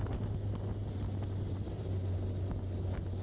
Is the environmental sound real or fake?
real